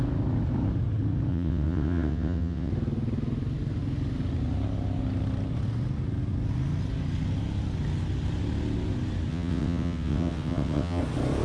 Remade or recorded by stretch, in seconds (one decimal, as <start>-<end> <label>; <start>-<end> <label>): 0.0-1.3 recorded; 1.3-2.7 remade; 2.7-9.3 recorded; 9.3-11.0 remade; 11.0-11.4 recorded